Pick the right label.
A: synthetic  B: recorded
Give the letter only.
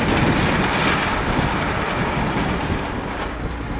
B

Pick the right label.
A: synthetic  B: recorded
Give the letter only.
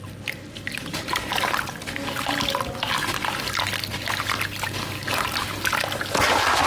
B